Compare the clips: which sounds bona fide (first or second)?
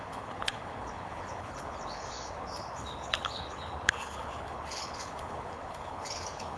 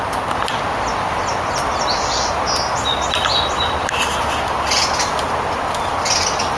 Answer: second